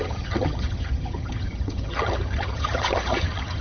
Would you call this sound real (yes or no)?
no